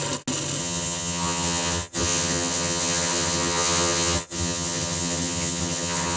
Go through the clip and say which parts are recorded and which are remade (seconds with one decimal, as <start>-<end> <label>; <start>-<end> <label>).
0.0-0.6 recorded; 0.6-6.2 remade